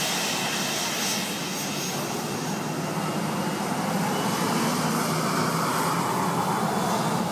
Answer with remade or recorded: recorded